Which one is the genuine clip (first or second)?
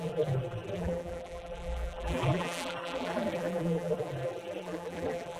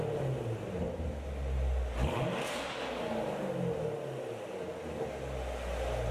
second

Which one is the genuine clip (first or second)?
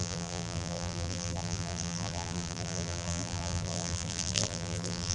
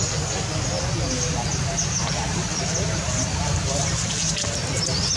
second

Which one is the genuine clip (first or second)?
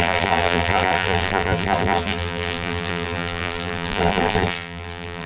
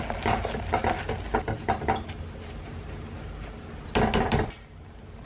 second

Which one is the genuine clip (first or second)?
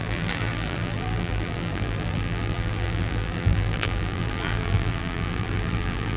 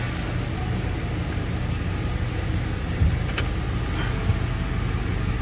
second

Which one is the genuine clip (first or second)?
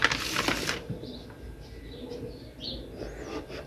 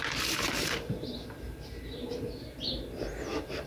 first